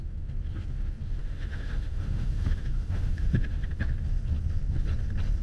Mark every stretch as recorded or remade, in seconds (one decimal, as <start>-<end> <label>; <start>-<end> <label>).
0.0-1.2 recorded; 1.2-3.7 remade; 3.7-5.4 recorded